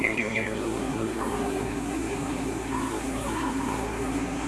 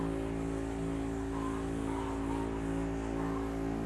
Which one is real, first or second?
second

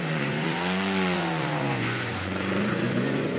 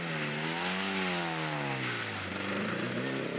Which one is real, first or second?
second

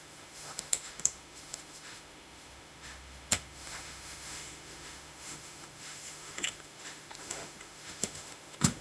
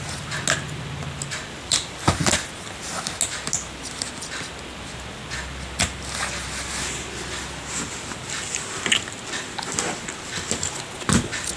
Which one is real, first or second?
second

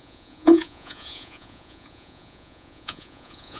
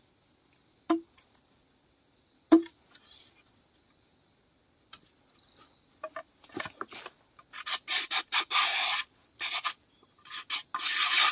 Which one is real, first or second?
second